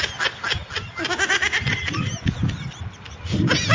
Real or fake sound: real